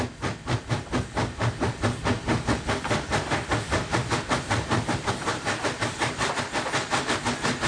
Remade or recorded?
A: recorded